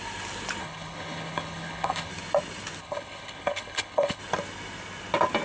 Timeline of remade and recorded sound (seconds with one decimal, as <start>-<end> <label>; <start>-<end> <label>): 0.0-0.6 recorded; 0.6-2.1 remade; 2.1-2.8 recorded; 2.8-4.2 remade; 4.2-5.4 recorded